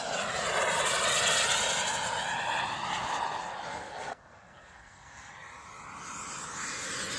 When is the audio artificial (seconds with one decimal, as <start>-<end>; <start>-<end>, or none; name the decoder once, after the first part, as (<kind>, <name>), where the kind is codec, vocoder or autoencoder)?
3.7-5.3 (codec, SNAC)